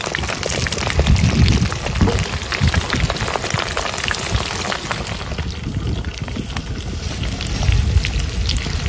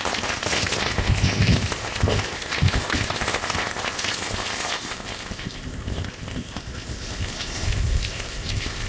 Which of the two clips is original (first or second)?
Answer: first